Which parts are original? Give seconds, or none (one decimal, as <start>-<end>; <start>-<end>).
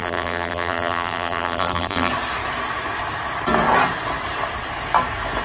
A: 2.1-5.4